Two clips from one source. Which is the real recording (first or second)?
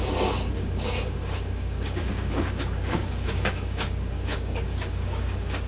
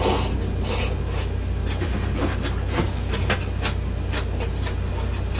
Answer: second